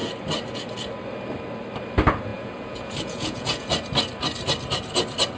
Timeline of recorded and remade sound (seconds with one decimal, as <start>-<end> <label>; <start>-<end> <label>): 0.0-2.3 recorded; 2.3-3.7 remade; 3.7-5.4 recorded